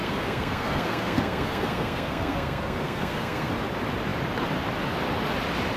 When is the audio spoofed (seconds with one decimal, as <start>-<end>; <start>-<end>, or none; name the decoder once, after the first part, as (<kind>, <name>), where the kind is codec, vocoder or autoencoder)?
0.0-3.5 (codec, SNAC)